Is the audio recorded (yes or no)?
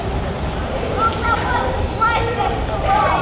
yes